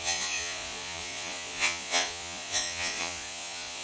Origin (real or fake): fake